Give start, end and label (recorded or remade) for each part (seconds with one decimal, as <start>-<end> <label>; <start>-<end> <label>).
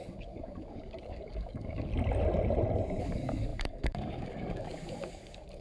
0.0-1.9 remade; 1.9-3.0 recorded; 3.0-5.6 remade